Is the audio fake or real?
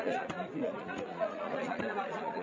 fake